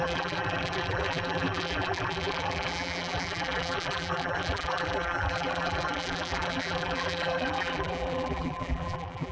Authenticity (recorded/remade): remade